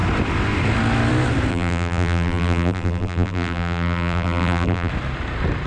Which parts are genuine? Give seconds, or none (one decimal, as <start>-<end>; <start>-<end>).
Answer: 0.0-1.5; 4.9-5.7